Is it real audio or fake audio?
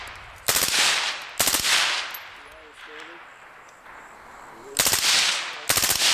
real